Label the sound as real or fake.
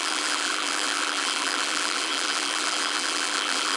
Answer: fake